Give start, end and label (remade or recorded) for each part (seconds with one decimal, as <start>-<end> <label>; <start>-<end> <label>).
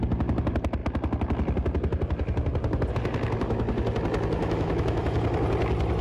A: 0.0-4.4 recorded; 4.4-5.0 remade; 5.0-6.0 recorded